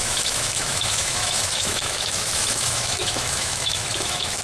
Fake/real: fake